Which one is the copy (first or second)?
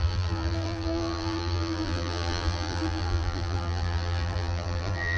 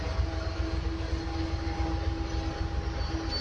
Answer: first